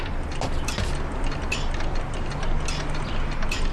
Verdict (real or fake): real